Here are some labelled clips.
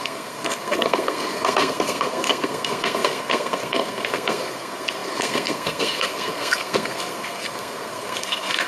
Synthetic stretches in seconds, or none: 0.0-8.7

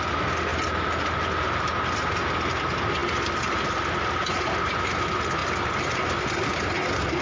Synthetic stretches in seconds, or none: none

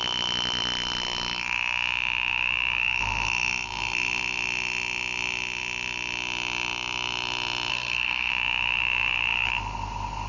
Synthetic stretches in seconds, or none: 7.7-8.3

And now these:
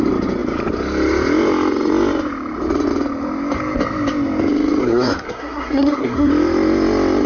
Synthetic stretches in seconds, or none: 4.8-6.3

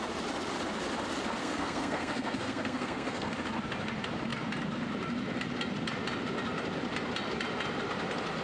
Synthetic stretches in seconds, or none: 1.4-3.3

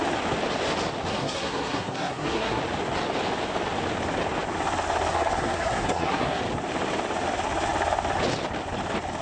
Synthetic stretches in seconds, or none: 1.1-2.6; 5.1-6.4